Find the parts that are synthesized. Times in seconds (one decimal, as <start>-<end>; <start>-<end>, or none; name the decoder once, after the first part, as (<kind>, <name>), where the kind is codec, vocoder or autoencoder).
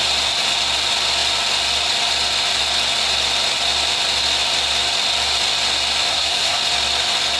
6.1-6.6 (codec, SNAC)